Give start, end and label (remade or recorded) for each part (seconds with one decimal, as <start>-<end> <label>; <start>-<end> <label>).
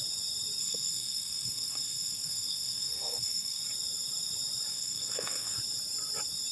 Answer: 0.0-0.6 recorded; 0.6-3.6 remade; 3.6-4.7 recorded; 4.7-5.6 remade; 5.6-6.5 recorded